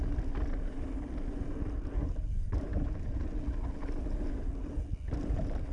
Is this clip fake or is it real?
real